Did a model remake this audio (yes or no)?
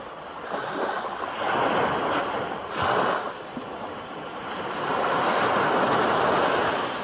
no